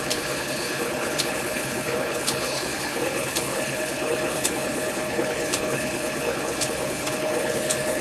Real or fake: fake